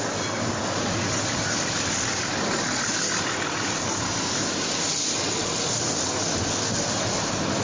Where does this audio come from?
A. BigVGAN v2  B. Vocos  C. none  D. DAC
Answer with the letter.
C